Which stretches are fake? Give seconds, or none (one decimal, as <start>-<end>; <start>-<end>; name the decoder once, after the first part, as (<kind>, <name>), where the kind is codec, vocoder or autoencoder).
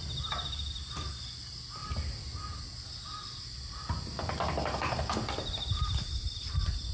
none